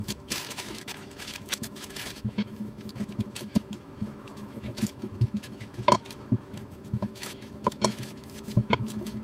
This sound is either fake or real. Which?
fake